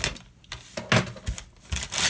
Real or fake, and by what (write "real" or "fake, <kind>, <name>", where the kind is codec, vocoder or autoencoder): real